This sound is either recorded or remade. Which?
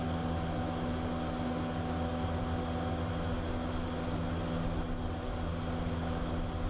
recorded